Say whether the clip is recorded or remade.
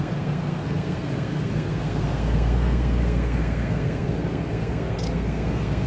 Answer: remade